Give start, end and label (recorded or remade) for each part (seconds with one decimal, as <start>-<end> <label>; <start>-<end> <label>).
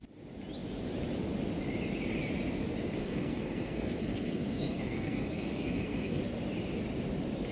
0.0-3.0 recorded; 3.0-6.2 remade; 6.2-7.5 recorded